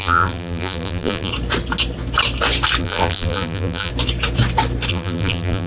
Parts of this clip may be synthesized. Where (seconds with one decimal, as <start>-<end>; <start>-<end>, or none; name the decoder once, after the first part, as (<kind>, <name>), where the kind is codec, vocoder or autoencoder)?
0.0-1.3 (vocoder, BigVGAN v2); 2.8-3.9; 4.9-5.7